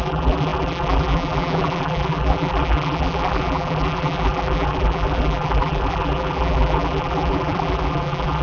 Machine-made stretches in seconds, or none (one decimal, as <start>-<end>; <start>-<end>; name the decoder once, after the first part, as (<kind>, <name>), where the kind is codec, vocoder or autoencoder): 0.0-8.4 (vocoder, BigVGAN v2)